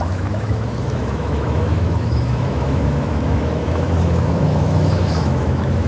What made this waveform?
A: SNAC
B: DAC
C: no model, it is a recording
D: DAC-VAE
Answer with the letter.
D